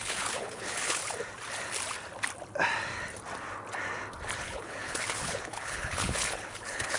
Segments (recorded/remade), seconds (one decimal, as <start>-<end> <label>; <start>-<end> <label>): 0.0-1.0 remade; 1.0-4.4 recorded; 4.4-7.0 remade